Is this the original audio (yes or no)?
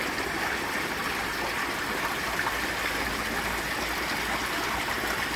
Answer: yes